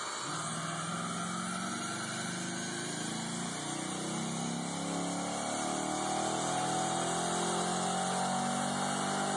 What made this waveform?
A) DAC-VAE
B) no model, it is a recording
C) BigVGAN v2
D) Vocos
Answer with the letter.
B